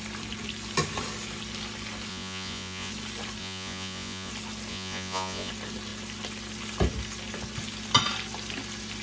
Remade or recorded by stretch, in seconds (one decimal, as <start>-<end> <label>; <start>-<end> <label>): 0.0-2.1 recorded; 2.1-2.9 remade; 2.9-3.4 recorded; 3.4-4.3 remade; 4.3-4.7 recorded; 4.7-5.5 remade; 5.5-9.0 recorded